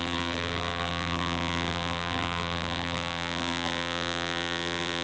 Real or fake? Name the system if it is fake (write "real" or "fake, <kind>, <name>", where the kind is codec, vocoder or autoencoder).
fake, vocoder, BigVGAN v2